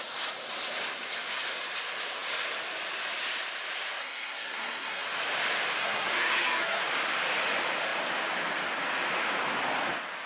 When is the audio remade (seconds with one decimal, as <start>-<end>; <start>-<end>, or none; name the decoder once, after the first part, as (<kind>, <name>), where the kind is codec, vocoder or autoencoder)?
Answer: 4.0-5.0 (codec, SNAC); 5.8-6.8